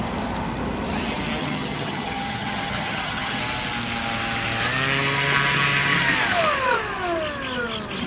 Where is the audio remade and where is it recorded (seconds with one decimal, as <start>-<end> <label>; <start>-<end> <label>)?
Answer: 0.0-1.4 recorded; 1.4-3.4 remade; 3.4-8.1 recorded